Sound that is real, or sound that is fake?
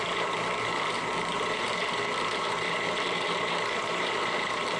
fake